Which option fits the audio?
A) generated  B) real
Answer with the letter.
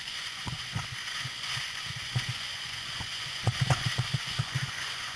A